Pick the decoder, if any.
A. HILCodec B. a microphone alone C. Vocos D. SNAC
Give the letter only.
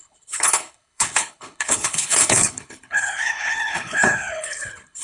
A